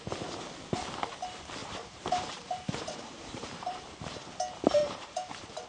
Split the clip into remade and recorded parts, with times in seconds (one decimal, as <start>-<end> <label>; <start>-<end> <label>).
0.0-1.6 recorded; 1.6-3.9 remade; 3.9-4.8 recorded; 4.8-5.7 remade